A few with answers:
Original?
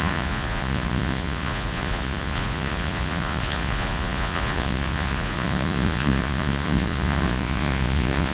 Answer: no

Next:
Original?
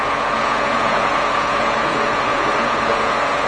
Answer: no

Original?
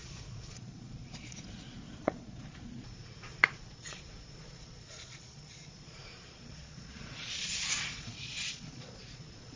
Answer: no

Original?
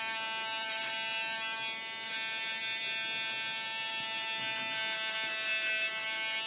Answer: yes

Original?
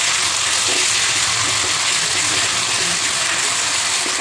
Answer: yes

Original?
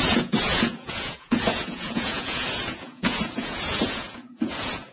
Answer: no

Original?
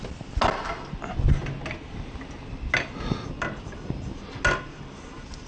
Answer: yes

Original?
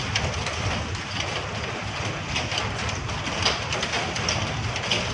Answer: yes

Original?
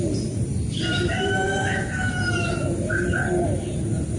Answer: yes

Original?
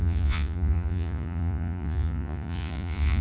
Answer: no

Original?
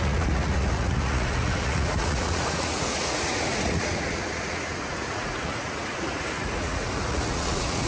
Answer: no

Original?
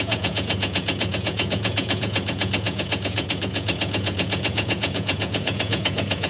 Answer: no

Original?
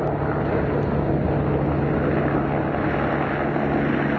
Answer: yes